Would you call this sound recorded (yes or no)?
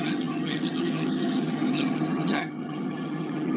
no